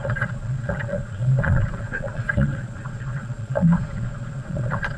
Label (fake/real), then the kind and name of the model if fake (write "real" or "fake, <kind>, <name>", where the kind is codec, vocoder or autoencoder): fake, vocoder, Vocos